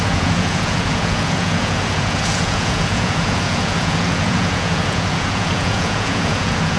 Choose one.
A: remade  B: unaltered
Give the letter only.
A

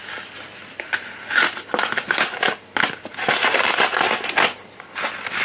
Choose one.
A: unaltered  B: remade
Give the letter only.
A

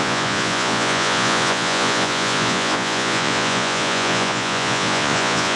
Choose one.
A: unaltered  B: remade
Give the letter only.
B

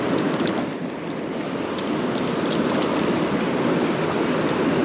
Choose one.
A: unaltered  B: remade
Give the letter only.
A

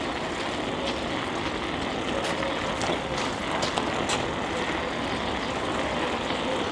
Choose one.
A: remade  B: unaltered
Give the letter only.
B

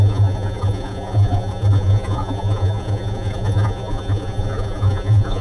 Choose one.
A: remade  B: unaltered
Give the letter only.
A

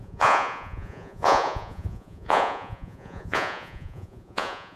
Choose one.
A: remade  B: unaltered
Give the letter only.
A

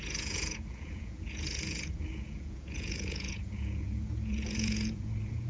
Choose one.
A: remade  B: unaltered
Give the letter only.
A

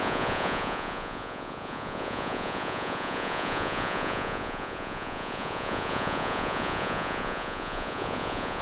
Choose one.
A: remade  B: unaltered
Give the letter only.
A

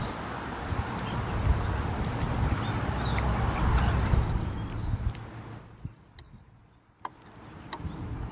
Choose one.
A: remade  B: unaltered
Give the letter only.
B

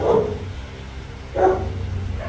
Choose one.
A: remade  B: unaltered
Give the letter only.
B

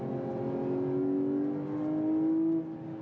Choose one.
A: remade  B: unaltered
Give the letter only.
B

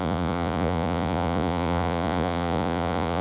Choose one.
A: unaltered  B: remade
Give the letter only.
B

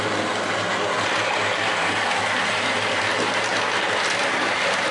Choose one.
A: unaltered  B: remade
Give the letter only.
A